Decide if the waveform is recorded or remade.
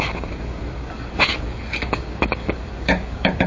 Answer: remade